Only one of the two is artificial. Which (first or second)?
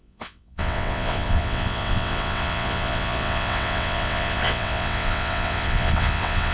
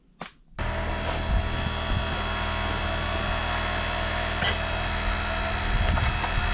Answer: first